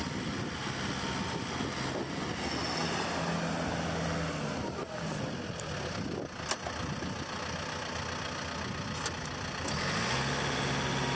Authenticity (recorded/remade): recorded